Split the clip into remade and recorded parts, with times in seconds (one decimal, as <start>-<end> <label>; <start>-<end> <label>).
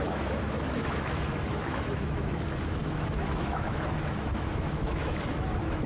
0.0-5.9 remade